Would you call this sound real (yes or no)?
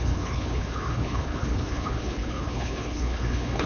no